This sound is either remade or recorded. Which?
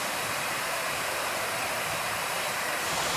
remade